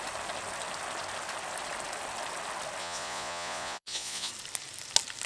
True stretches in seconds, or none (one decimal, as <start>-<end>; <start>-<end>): 0.0-2.8; 4.3-5.3

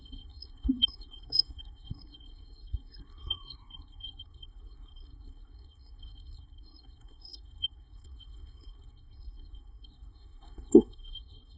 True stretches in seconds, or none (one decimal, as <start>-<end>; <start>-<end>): none

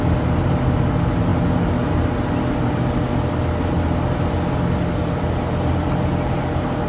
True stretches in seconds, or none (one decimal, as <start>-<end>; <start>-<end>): 0.0-6.9

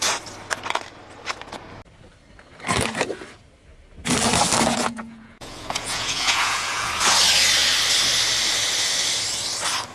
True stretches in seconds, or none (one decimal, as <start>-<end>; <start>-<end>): 0.0-4.7; 6.9-9.9

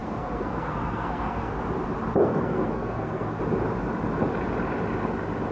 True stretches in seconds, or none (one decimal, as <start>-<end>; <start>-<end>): 1.5-2.2; 3.4-5.5

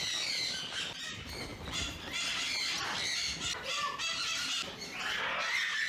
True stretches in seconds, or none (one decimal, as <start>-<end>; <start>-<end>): 0.0-5.9